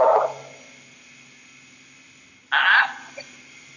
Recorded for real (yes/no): yes